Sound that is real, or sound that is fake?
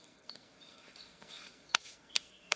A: fake